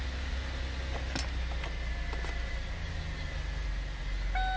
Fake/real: real